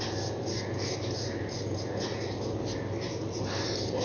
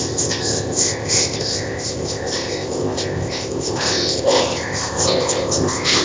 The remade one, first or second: second